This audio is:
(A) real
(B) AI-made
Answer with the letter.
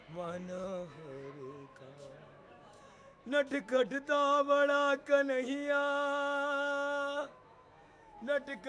B